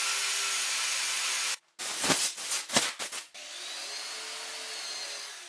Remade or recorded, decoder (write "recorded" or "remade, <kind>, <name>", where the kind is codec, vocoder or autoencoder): recorded